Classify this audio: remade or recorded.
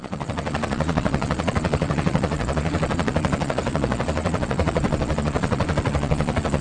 remade